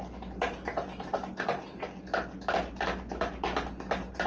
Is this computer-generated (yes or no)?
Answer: no